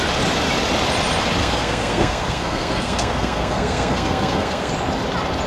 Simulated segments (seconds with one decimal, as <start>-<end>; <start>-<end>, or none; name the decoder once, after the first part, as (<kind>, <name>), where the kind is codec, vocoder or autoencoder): 1.4-4.7 (codec, SNAC)